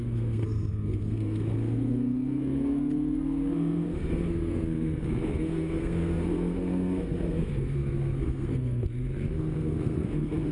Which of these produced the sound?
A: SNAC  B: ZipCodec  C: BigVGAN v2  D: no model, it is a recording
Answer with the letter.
A